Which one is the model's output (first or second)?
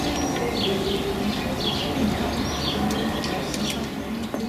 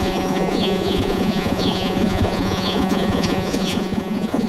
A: second